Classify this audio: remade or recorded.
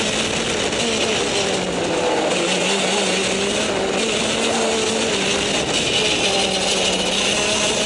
recorded